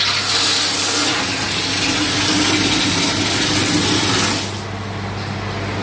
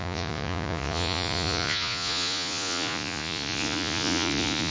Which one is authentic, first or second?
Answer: first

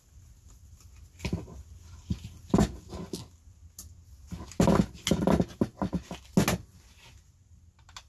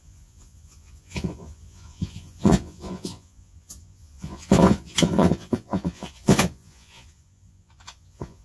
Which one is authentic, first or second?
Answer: first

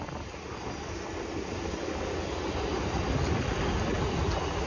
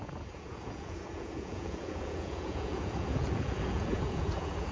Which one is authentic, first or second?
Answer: first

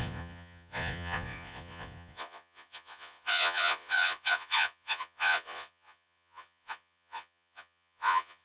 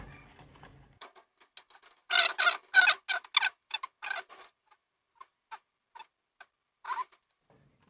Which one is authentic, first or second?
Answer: second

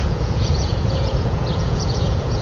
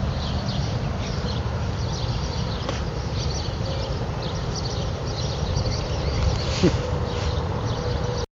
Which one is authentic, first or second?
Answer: second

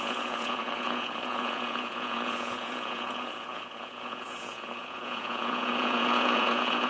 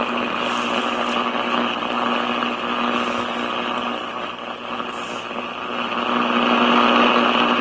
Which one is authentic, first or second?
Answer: second